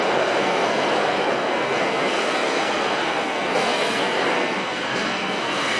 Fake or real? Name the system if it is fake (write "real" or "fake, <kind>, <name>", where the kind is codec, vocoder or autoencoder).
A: fake, codec, SNAC